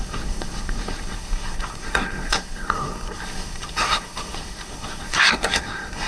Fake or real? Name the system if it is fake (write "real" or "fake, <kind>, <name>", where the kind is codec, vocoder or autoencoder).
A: fake, codec, SNAC